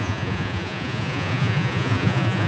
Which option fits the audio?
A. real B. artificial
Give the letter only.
B